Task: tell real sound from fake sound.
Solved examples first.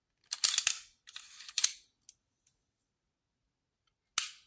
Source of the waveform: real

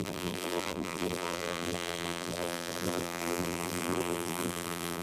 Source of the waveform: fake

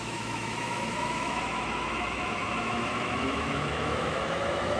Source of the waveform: fake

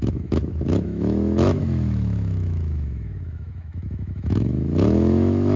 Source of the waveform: fake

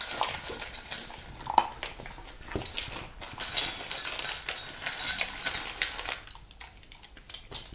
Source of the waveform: real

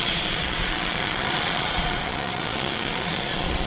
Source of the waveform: fake